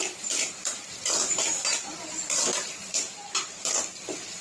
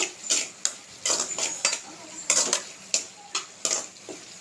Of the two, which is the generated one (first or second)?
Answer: first